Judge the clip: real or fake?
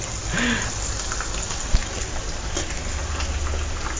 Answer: real